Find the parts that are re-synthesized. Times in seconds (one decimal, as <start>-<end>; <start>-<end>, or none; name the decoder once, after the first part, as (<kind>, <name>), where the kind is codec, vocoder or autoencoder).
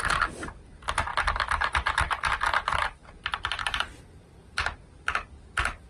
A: 1.1-2.3 (vocoder, BigVGAN v2)